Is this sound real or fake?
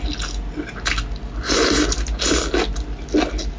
real